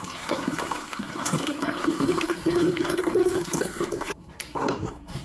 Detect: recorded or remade remade